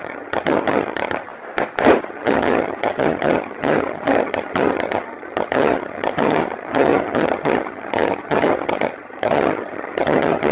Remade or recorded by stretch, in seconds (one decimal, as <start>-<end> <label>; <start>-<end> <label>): 0.0-1.3 remade; 1.3-2.0 recorded; 2.0-10.5 remade